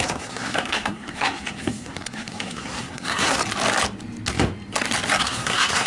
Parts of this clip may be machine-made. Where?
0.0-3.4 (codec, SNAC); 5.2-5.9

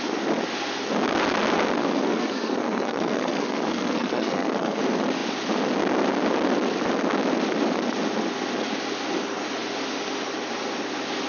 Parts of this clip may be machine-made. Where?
1.8-4.8 (codec, SNAC)

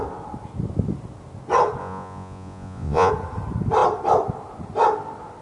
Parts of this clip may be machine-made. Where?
1.8-3.1 (vocoder, Vocos)

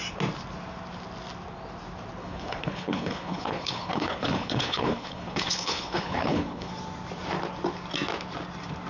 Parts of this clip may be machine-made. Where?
2.2-6.7 (codec, HILCodec)

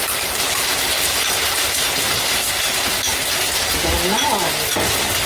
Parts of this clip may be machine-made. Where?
0.0-2.2 (vocoder, BigVGAN v2)

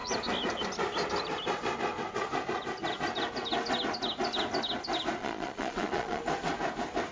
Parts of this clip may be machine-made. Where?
5.2-6.2 (vocoder, Vocos)